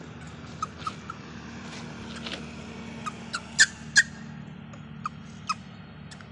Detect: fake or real real